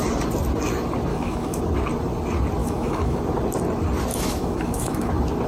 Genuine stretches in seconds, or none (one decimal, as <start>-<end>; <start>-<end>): 0.0-1.1; 1.6-2.6; 3.2-4.1; 5.1-5.5